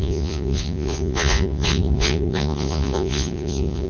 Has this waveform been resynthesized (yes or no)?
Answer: yes